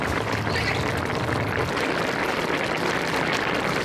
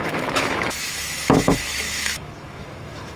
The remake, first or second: second